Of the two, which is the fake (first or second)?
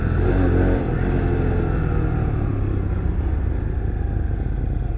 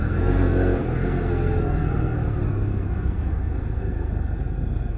second